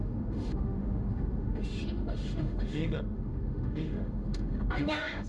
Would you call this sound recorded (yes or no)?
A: no